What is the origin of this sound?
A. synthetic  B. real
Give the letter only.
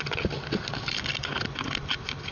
B